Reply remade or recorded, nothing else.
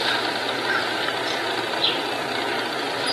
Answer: recorded